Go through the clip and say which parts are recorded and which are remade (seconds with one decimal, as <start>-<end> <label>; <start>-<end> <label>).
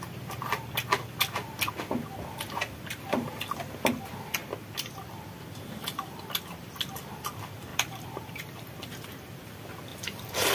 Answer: 0.0-7.7 recorded; 7.7-8.9 remade; 8.9-9.9 recorded; 9.9-10.5 remade